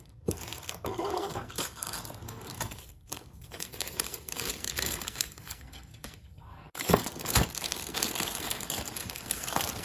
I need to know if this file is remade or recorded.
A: remade